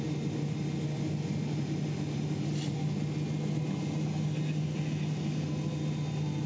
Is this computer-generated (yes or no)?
no